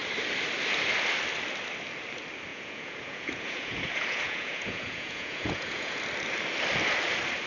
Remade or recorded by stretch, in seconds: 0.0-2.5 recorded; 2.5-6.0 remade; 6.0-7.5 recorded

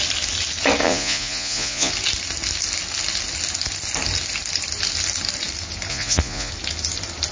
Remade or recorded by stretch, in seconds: 0.0-0.8 recorded; 0.8-1.9 remade; 1.9-5.9 recorded; 5.9-6.5 remade; 6.5-7.3 recorded

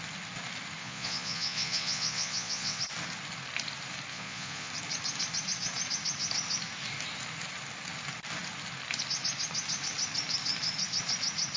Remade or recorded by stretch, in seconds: 0.0-0.8 recorded; 0.8-2.8 remade; 2.8-4.1 recorded; 4.1-4.7 remade; 4.7-11.6 recorded

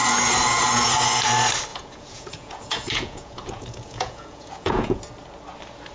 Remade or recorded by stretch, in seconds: 0.0-1.7 recorded; 1.7-5.0 remade; 5.0-5.9 recorded

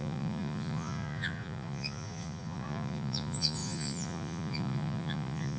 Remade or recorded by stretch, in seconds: 0.0-5.6 remade

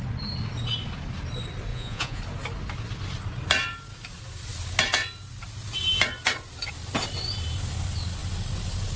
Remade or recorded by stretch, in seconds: 0.0-1.7 recorded; 1.7-2.2 remade; 2.2-9.0 recorded